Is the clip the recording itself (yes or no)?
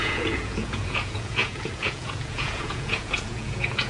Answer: no